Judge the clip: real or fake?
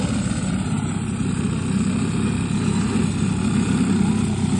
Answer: real